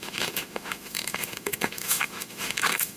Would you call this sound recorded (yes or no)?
no